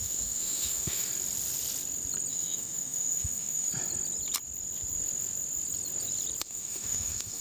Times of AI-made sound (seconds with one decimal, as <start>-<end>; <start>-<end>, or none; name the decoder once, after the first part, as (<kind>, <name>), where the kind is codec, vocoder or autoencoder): 0.0-1.1 (autoencoder, DAC-VAE); 2.3-3.7; 6.4-7.4